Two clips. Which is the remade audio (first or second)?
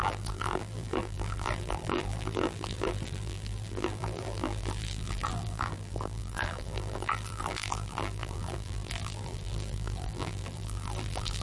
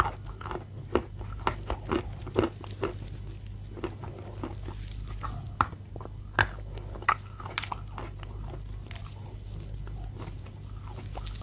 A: first